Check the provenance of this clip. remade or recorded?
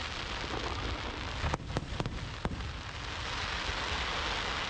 recorded